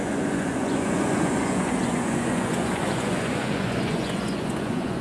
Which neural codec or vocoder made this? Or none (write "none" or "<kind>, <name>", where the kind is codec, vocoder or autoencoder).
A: vocoder, Vocos